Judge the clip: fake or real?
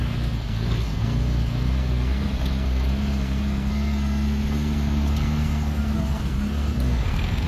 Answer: fake